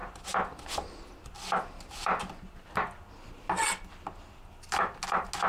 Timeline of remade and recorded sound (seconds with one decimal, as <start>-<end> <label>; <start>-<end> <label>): 0.0-5.5 recorded